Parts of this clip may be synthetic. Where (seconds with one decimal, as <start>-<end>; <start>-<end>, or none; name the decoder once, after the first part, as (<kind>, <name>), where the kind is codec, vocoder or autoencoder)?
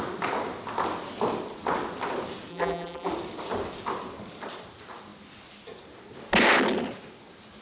2.5-3.1 (vocoder, BigVGAN v2)